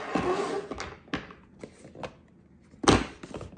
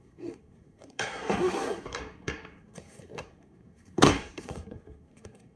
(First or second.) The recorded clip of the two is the first